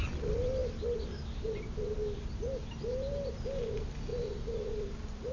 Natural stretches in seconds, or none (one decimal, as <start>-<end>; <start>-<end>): 0.0-5.3